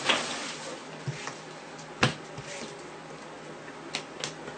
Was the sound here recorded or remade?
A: recorded